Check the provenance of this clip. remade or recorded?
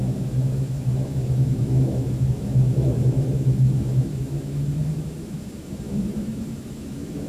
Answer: remade